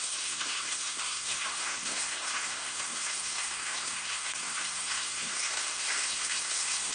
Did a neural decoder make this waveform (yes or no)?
yes